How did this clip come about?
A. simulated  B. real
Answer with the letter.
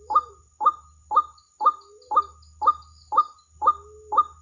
B